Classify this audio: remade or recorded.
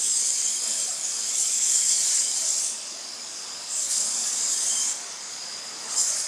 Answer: remade